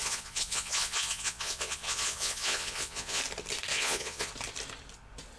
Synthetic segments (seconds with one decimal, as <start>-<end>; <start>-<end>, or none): 0.0-3.2; 3.7-4.3